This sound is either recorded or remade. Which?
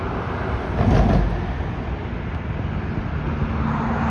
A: recorded